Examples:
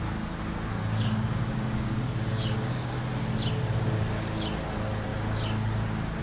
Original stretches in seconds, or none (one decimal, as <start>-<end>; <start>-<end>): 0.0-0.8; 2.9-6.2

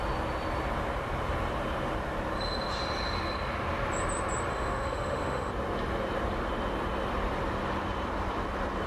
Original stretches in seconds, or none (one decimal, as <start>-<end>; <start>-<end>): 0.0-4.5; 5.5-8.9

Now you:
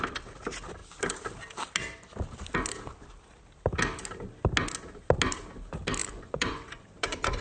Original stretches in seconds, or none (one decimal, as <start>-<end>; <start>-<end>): 0.0-6.0